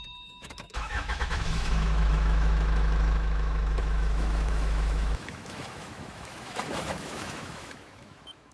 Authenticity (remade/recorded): remade